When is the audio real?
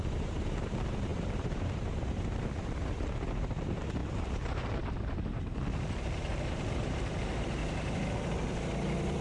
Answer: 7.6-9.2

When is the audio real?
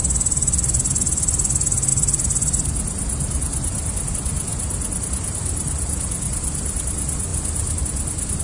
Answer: 0.0-8.4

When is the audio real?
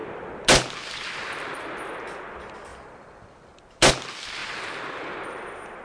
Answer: 0.0-2.7; 3.9-4.4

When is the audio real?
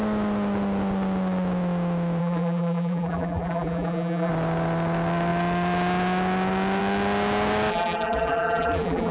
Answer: 0.0-2.2; 4.3-7.7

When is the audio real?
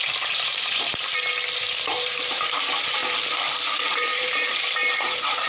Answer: 1.1-1.6; 3.0-3.7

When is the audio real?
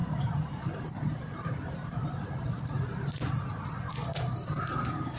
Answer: 3.1-5.2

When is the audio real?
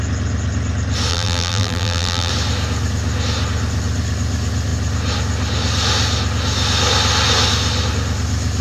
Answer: 0.0-1.1; 2.3-8.6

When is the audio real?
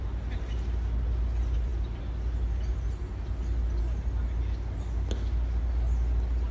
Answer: 0.0-6.5